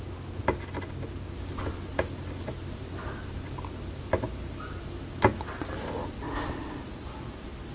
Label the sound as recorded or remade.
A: recorded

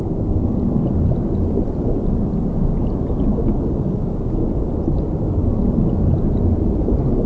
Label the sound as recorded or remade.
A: recorded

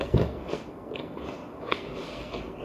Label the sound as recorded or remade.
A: remade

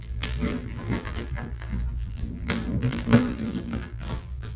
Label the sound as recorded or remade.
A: remade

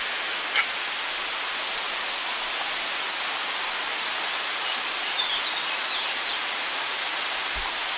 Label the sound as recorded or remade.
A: recorded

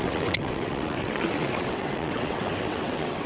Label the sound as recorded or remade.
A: remade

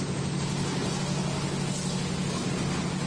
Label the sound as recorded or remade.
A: recorded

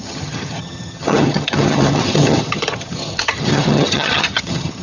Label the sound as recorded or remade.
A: remade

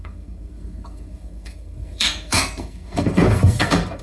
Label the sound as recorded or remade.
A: remade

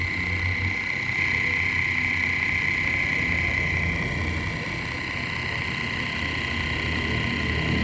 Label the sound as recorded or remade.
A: recorded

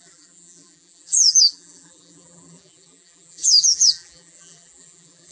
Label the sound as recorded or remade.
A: remade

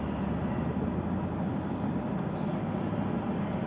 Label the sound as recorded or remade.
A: recorded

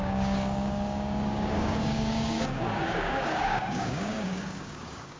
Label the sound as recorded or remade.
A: remade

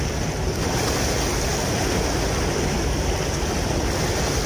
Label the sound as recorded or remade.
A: recorded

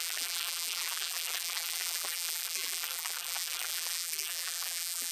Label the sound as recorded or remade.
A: remade